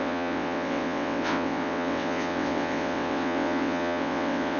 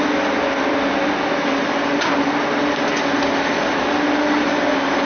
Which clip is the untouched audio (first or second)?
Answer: second